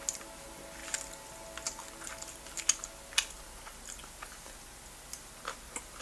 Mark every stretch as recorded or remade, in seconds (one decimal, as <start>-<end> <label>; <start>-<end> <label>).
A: 0.0-6.0 recorded